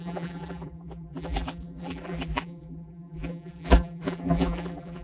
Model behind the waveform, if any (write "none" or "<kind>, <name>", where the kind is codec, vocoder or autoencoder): vocoder, BigVGAN v2